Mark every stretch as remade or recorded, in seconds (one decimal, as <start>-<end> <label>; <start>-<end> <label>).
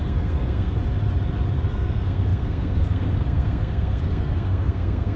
0.0-0.8 remade; 0.8-1.7 recorded; 1.7-5.2 remade